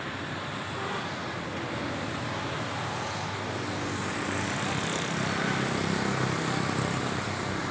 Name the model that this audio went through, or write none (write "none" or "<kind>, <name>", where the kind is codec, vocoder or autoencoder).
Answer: none